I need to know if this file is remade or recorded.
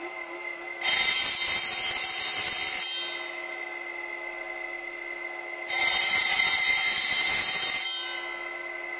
recorded